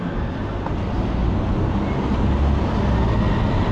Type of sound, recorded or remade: recorded